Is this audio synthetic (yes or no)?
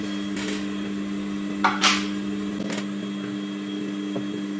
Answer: no